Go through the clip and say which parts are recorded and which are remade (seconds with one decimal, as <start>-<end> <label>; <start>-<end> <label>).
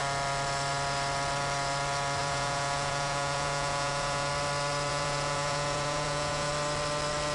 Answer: 0.0-2.2 recorded; 2.2-4.3 remade; 4.3-4.9 recorded; 4.9-6.5 remade; 6.5-7.3 recorded